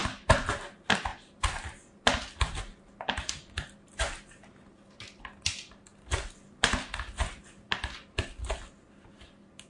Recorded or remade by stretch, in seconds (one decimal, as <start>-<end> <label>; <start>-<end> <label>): 0.0-9.7 recorded